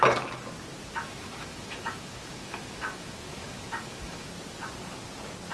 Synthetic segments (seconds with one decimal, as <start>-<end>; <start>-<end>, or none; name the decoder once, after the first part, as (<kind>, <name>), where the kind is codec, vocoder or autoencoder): 1.0-4.3 (autoencoder, DAC-VAE)